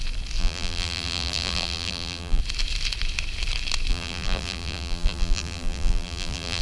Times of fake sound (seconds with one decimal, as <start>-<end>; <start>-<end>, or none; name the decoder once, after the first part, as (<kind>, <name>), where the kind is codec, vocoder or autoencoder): 0.4-2.4 (vocoder, BigVGAN v2); 3.9-6.6